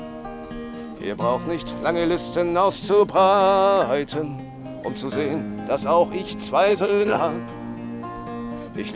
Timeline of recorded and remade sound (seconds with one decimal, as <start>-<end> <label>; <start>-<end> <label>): 0.0-6.7 recorded; 6.7-7.2 remade; 7.2-9.0 recorded